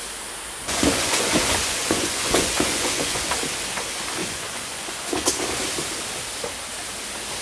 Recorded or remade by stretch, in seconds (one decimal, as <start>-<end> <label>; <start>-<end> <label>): 0.0-0.6 recorded; 0.6-3.3 remade; 3.3-4.2 recorded; 4.2-5.3 remade; 5.3-7.4 recorded